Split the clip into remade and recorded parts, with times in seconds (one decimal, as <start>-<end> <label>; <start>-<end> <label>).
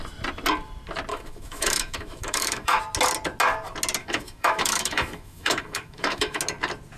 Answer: 0.0-1.1 recorded; 1.1-2.8 remade; 2.8-4.0 recorded; 4.0-6.4 remade; 6.4-7.0 recorded